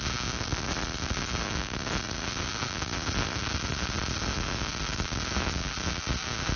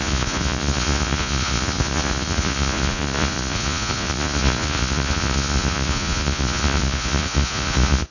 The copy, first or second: second